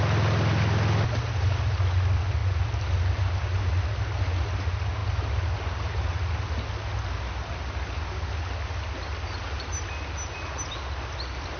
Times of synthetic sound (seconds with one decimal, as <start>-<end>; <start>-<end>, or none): none